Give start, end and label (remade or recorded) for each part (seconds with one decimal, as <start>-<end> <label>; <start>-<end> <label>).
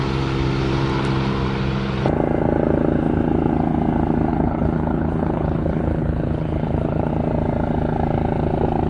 0.0-4.3 recorded; 4.3-7.1 remade; 7.1-8.9 recorded